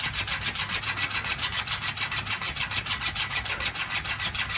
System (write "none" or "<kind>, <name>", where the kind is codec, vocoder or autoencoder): none